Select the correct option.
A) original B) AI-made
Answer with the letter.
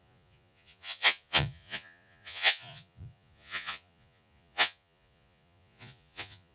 B